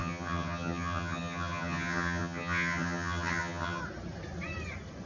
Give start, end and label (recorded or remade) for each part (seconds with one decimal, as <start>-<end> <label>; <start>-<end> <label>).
0.0-3.8 remade; 3.8-5.1 recorded